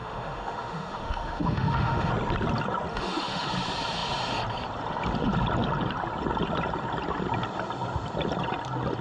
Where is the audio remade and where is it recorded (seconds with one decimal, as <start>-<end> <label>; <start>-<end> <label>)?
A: 0.0-2.1 remade; 2.1-2.9 recorded; 2.9-3.5 remade; 3.5-9.0 recorded